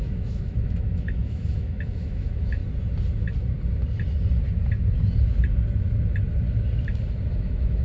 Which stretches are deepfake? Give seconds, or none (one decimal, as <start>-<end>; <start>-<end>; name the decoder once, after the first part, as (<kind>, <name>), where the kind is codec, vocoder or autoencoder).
0.0-2.6 (autoencoder, DAC-VAE); 7.3-7.8